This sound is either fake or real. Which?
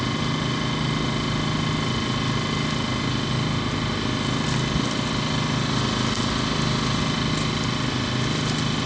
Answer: real